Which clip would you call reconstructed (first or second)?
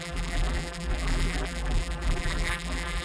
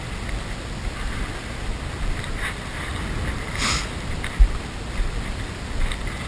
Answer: first